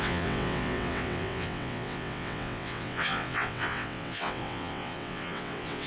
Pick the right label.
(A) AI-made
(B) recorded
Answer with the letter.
A